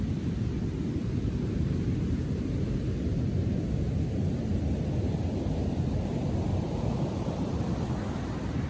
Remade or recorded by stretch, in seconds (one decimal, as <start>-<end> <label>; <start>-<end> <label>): 0.0-1.0 recorded; 1.0-2.2 remade; 2.2-6.5 recorded; 6.5-7.9 remade; 7.9-8.7 recorded